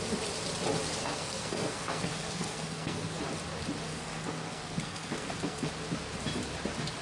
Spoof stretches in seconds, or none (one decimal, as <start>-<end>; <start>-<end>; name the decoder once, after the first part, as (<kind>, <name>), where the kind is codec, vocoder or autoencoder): 1.0-3.2 (codec, SNAC); 3.9-5.7